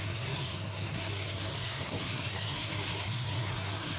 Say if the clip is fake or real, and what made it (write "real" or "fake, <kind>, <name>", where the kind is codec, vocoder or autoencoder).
fake, codec, SNAC